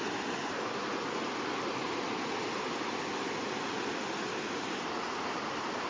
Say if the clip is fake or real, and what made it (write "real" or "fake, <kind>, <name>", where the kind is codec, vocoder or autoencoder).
real